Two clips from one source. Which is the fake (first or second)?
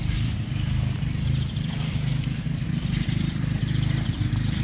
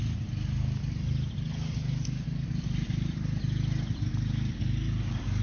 first